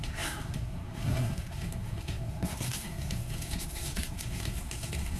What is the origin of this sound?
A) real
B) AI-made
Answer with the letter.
B